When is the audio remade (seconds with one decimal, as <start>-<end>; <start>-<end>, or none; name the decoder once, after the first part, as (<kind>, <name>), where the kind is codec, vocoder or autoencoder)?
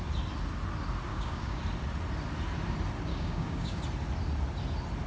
1.1-1.6 (codec, DAC); 3.1-3.8